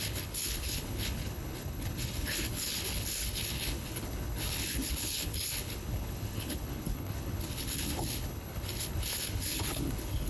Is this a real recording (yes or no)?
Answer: no